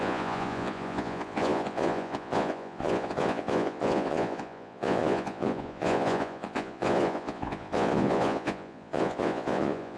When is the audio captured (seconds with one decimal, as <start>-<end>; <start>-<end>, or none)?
none